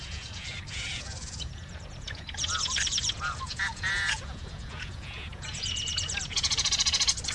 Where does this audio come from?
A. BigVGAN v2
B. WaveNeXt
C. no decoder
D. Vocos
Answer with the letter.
D